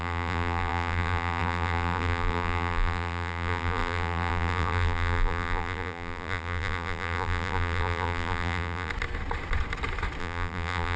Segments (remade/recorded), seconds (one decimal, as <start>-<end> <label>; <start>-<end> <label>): 0.0-8.9 remade; 8.9-10.2 recorded; 10.2-11.0 remade